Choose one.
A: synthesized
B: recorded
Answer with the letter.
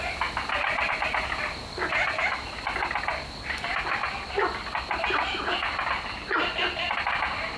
B